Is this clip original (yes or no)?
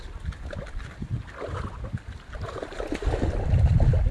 yes